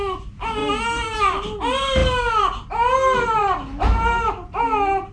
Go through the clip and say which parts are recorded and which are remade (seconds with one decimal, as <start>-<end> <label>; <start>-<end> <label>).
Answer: 0.0-5.1 recorded